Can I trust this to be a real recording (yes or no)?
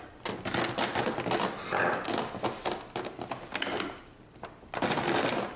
yes